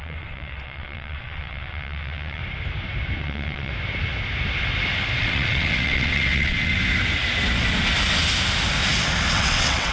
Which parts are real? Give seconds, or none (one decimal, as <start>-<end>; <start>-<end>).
2.4-3.2; 3.7-5.2; 6.7-9.3

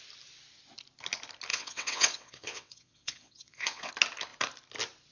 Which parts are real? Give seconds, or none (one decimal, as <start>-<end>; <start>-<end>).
0.0-1.5; 3.9-5.1

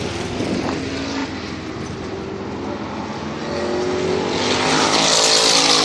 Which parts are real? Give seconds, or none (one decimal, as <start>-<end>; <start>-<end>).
0.0-5.8

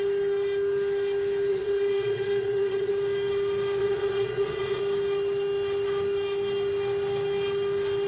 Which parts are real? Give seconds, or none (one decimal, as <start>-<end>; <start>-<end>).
0.0-1.5; 2.9-3.8; 4.8-8.1

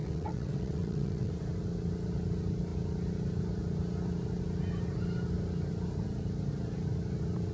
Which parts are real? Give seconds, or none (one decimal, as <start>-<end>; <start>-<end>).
1.3-7.5

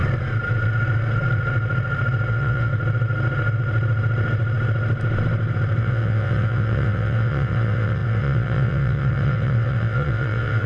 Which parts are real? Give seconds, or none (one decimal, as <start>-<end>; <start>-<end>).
0.0-2.3; 2.7-5.8